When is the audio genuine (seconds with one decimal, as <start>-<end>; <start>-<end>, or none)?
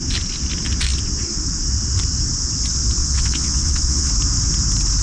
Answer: 0.0-3.0; 4.1-5.0